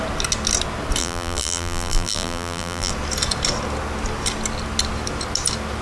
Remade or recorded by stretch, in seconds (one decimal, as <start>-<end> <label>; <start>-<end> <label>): 0.0-1.0 recorded; 1.0-2.9 remade; 2.9-5.8 recorded